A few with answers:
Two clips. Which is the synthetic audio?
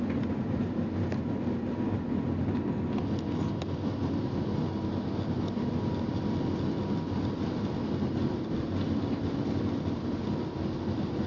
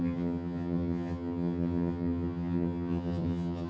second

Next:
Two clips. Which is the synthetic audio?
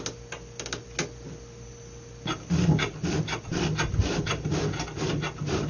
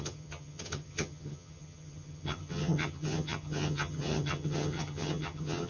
second